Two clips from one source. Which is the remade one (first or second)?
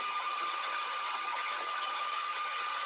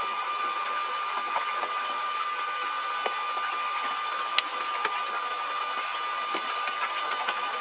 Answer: first